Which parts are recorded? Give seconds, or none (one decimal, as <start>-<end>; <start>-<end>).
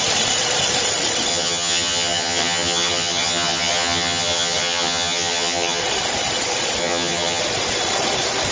0.0-1.3; 5.8-6.8; 7.4-8.5